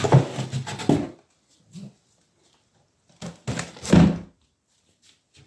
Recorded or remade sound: recorded